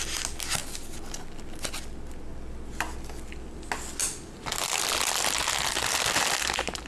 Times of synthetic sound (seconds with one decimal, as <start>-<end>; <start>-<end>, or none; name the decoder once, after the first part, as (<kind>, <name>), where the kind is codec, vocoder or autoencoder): none

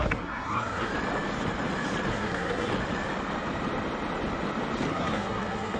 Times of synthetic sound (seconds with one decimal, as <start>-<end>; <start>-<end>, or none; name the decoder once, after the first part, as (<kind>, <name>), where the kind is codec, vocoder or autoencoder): 0.0-0.9 (codec, SNAC); 2.1-2.7; 4.9-5.8

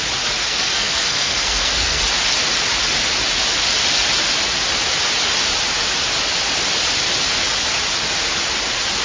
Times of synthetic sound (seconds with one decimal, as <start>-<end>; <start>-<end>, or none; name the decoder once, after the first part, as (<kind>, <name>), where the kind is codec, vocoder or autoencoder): 0.4-2.0 (codec, SNAC)

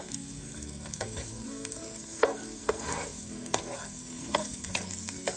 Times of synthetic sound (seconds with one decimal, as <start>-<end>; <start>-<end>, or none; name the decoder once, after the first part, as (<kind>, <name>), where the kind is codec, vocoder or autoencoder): 0.0-5.4 (codec, SNAC)

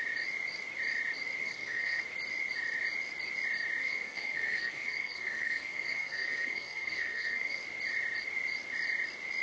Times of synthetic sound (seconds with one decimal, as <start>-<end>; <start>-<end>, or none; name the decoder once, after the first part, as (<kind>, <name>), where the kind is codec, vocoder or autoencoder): 1.4-2.0 (codec, SNAC); 3.8-7.6